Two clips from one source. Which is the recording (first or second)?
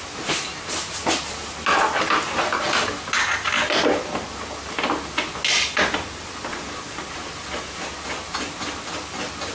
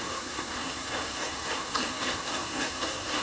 first